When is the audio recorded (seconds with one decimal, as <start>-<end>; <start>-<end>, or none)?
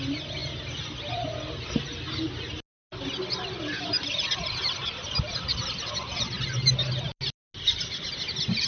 0.0-8.7